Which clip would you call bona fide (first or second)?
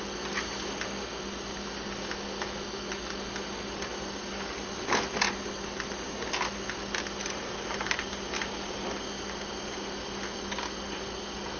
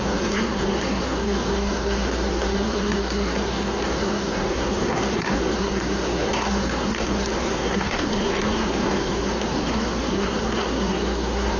first